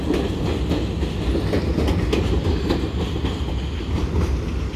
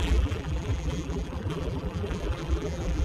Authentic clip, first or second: first